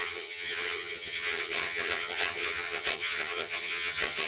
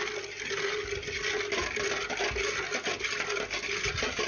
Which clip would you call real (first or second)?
second